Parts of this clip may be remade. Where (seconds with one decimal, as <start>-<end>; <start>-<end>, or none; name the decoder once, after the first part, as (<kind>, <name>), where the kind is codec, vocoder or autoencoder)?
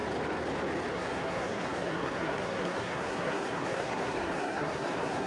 0.9-5.3 (codec, SNAC)